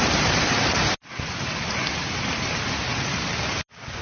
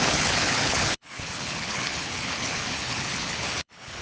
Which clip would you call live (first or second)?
first